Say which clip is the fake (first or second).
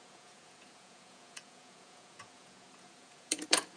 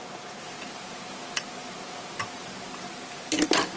first